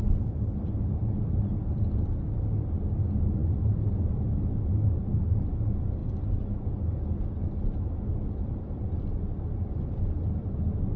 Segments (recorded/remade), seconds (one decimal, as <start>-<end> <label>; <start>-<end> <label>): 0.0-11.0 recorded